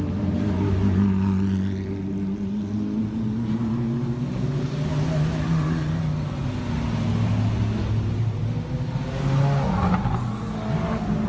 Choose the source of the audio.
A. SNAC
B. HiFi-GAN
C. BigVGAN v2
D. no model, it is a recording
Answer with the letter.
D